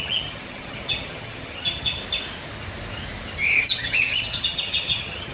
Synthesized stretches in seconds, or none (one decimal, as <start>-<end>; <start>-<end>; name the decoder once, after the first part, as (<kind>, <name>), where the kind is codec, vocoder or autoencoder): 0.0-2.0 (vocoder, HiFi-GAN); 3.6-5.3